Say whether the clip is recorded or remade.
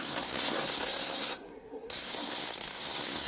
remade